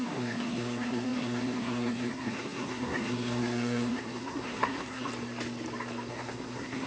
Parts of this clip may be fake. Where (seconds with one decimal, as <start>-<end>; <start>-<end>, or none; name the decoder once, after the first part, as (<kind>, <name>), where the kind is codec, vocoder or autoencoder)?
0.0-5.1 (codec, SNAC); 6.1-6.9